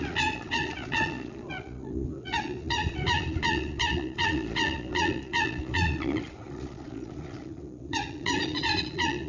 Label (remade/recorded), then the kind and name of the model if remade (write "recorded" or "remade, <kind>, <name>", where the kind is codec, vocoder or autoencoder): remade, vocoder, Vocos